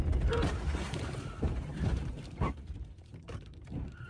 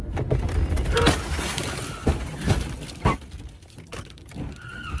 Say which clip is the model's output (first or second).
first